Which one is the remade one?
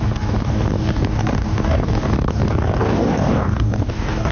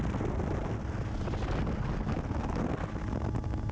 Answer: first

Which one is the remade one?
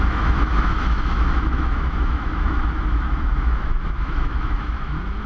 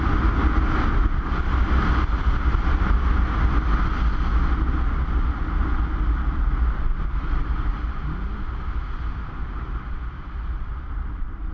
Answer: first